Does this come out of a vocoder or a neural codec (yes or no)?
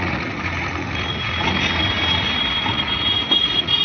yes